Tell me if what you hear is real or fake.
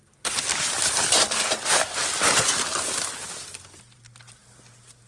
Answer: real